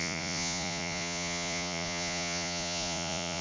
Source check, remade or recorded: remade